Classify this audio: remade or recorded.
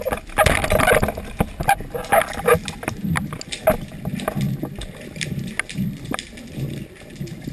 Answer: recorded